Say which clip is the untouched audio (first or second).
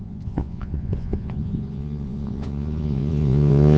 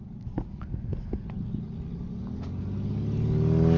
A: second